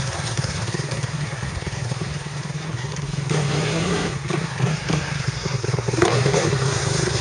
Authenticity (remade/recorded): remade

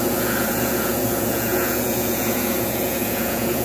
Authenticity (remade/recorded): remade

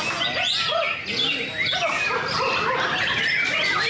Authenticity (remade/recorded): recorded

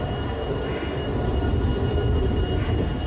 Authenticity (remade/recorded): recorded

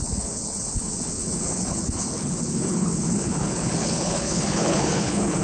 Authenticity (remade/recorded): remade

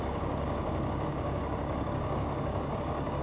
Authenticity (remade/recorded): remade